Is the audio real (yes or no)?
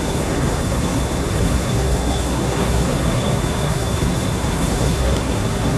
no